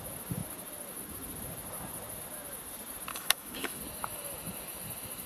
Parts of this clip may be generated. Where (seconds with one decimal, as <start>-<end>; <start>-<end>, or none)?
3.1-3.8